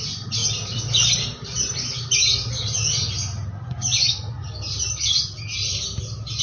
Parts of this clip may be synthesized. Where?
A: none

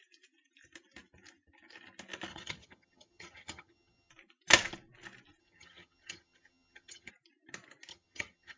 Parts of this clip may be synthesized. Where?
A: 2.3-4.1; 5.4-7.1; 7.9-8.6

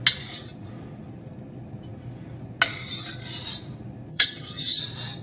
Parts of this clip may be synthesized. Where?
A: 4.1-4.8

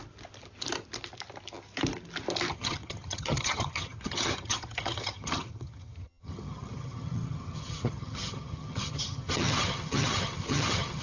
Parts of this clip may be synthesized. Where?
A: 2.5-11.0

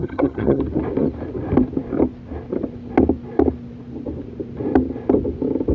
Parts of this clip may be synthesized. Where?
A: 0.0-0.6

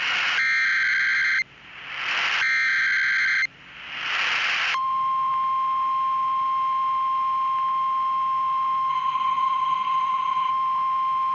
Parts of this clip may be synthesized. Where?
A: 8.9-10.5

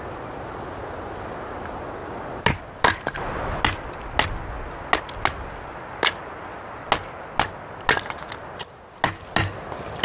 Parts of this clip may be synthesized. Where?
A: none